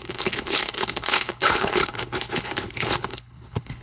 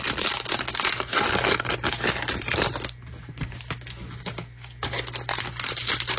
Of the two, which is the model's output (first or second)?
first